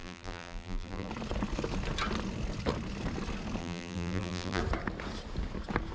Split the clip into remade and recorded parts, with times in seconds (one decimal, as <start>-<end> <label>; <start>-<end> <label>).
0.0-1.1 remade; 1.1-3.6 recorded; 3.6-4.6 remade; 4.6-5.9 recorded